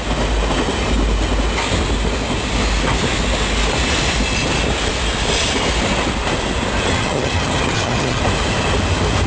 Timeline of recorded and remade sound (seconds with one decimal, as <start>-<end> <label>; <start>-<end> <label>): 0.0-6.9 recorded; 6.9-8.2 remade; 8.2-9.3 recorded